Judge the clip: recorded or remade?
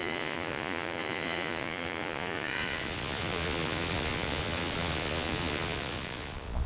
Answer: remade